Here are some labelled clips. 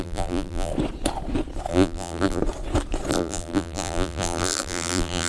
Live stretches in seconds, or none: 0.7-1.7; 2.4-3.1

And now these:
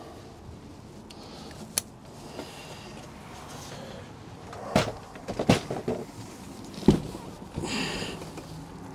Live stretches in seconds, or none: 0.0-8.9

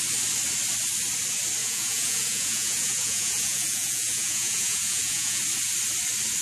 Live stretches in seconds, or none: 0.0-1.6; 5.4-6.4

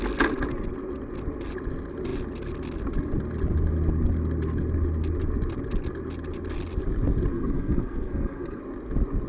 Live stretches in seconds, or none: 0.0-7.3; 8.6-9.3